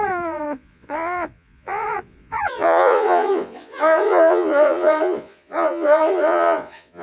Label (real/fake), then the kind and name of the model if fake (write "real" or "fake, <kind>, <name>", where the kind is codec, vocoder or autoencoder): fake, vocoder, Vocos